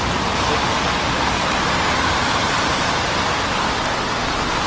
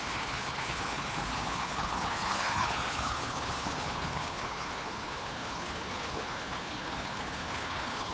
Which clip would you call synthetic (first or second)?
second